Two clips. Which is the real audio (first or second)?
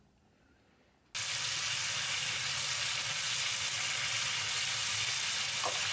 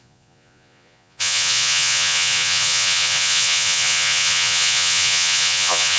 first